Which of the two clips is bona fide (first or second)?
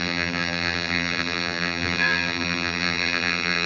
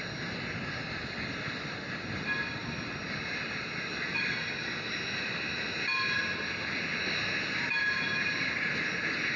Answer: second